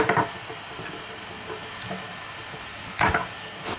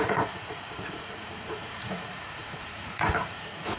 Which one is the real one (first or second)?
first